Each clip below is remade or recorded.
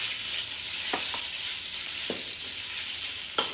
recorded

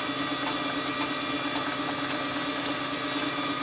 recorded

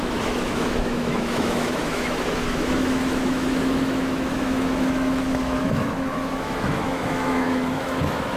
remade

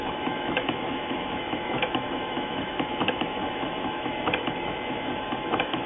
remade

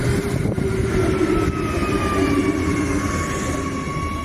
recorded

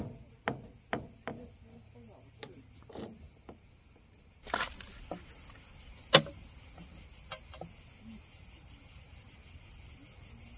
recorded